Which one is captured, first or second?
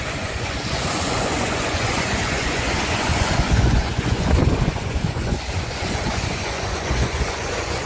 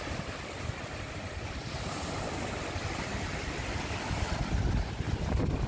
second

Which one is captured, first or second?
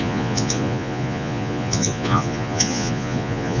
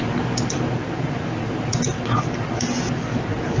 second